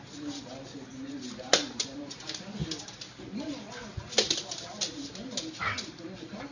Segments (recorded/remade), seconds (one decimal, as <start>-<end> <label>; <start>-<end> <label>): 0.0-6.5 recorded